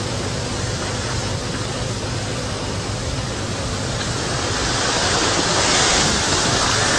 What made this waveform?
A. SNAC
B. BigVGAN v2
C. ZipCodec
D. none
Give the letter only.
B